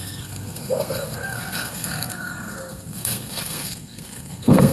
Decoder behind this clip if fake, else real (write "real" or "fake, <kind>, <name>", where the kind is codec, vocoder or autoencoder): fake, codec, SNAC